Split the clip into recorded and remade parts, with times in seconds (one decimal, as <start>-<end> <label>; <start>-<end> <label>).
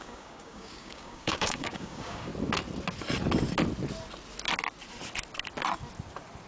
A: 0.0-2.3 remade; 2.3-6.5 recorded